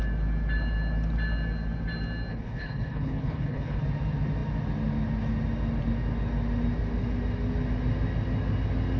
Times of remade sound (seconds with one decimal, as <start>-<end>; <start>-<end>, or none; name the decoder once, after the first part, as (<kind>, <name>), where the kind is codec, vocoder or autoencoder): 2.3-3.8 (codec, HILCodec)